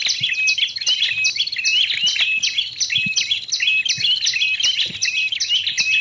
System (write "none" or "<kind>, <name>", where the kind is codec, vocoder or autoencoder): none